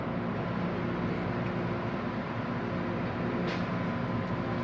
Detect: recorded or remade recorded